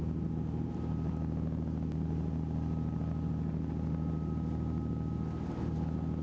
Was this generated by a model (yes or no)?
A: no